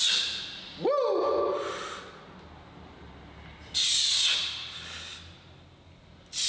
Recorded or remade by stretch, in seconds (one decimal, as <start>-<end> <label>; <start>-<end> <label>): 0.0-6.5 recorded